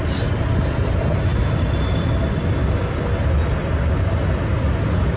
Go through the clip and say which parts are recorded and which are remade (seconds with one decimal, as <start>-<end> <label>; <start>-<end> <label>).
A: 0.0-5.2 recorded